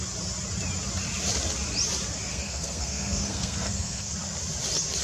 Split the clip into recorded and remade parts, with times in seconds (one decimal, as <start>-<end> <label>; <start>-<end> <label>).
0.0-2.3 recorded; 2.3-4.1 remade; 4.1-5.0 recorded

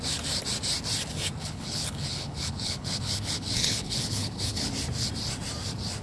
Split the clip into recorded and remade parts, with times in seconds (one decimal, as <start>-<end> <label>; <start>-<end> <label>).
0.0-1.4 recorded; 1.4-4.7 remade; 4.7-6.0 recorded

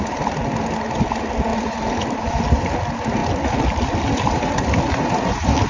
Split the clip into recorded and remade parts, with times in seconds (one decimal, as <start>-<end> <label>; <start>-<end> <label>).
0.0-1.5 recorded; 1.5-2.3 remade; 2.3-5.7 recorded

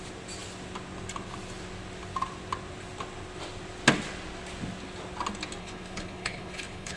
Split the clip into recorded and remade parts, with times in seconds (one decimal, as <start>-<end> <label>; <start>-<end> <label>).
0.0-5.6 recorded; 5.6-7.0 remade

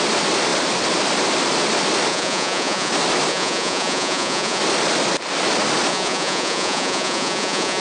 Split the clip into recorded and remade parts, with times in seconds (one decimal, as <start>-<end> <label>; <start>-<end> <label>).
0.0-2.1 recorded; 2.1-2.9 remade; 2.9-3.3 recorded; 3.3-4.6 remade; 4.6-5.9 recorded; 5.9-7.8 remade